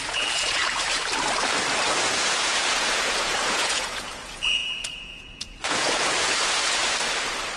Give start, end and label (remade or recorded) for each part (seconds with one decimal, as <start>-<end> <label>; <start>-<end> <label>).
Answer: 0.0-0.6 remade; 0.6-2.0 recorded; 2.0-6.8 remade; 6.8-7.6 recorded